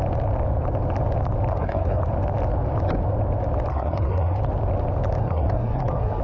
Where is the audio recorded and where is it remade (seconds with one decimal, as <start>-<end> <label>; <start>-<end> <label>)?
0.0-1.5 recorded; 1.5-2.0 remade; 2.0-3.7 recorded; 3.7-4.4 remade; 4.4-5.2 recorded; 5.2-6.2 remade